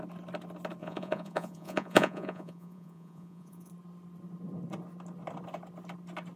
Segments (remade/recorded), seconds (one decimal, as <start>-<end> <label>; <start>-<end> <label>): 0.0-0.8 recorded; 0.8-3.7 remade; 3.7-6.4 recorded